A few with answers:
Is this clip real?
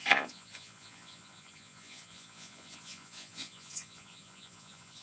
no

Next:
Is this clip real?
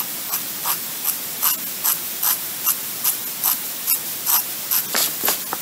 yes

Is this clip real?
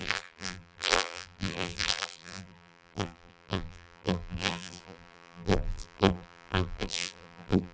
no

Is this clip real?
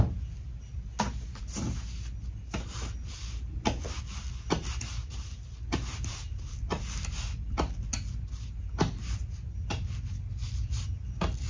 yes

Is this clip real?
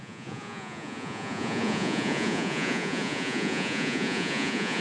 no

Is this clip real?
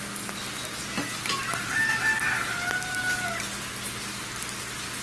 yes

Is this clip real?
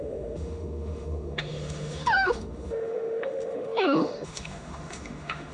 no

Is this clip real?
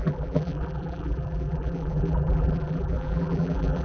no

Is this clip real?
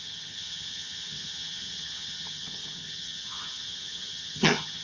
no